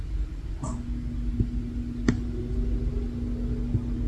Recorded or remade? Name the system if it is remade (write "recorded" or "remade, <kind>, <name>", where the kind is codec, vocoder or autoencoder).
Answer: recorded